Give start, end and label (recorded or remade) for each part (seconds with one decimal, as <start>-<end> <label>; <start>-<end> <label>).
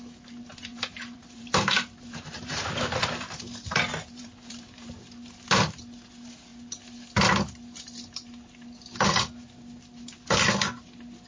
0.0-0.7 recorded; 0.7-4.9 remade; 4.9-11.3 recorded